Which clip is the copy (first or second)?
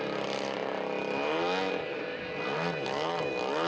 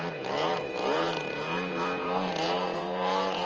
second